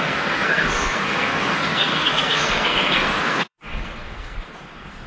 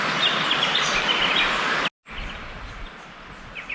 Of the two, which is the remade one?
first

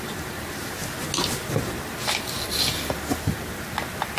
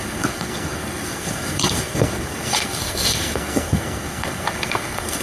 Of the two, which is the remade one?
second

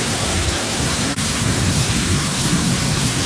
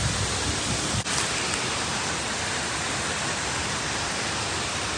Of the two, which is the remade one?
first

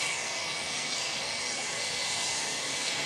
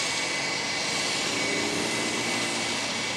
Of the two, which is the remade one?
first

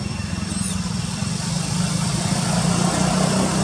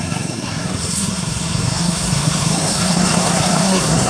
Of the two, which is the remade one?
second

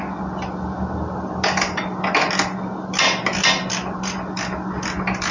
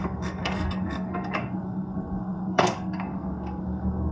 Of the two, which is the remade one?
second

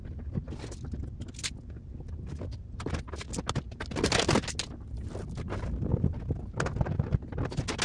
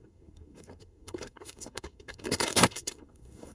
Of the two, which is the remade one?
second